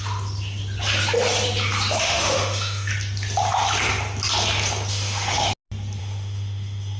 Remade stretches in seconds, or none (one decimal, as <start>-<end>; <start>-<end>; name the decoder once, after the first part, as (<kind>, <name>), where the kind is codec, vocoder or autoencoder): 2.0-2.9 (autoencoder, DAC-VAE); 4.9-5.5; 6.0-7.0